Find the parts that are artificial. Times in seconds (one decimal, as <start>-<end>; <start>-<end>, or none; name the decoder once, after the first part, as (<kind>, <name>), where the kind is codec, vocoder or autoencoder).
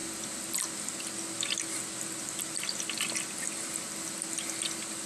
none